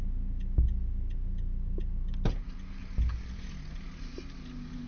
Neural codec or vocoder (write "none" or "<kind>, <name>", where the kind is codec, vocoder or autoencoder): none